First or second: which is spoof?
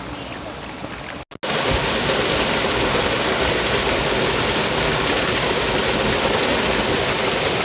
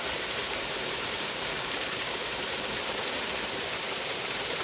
second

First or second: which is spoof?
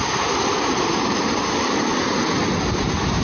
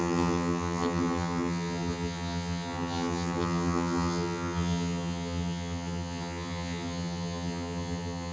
second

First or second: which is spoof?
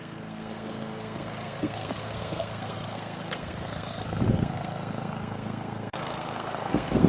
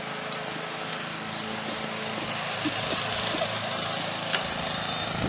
first